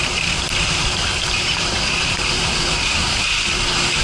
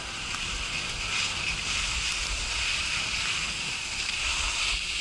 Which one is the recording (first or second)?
second